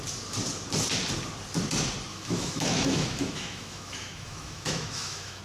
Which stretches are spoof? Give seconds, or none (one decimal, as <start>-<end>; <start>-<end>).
2.1-5.4